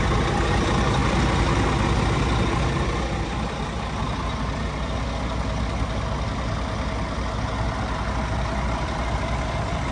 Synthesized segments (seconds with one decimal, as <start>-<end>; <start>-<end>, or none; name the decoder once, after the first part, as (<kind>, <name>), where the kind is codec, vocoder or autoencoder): none